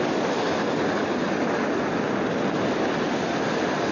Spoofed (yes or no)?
no